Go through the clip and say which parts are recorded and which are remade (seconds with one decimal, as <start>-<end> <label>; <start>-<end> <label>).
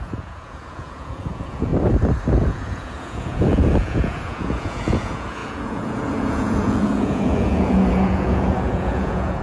0.0-1.7 remade; 1.7-2.3 recorded; 2.3-9.4 remade